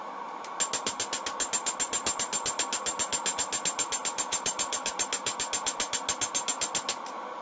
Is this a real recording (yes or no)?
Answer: yes